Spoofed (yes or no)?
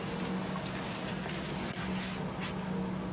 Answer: no